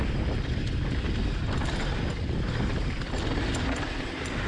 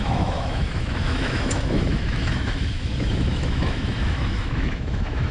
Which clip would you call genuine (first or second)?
first